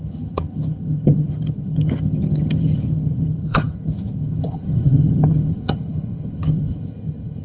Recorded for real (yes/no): no